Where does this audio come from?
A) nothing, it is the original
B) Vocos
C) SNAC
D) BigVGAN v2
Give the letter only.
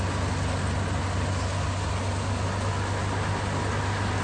A